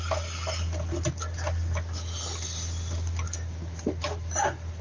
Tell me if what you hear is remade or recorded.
recorded